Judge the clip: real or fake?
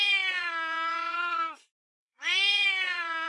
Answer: fake